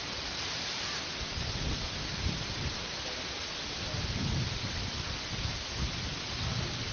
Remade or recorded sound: recorded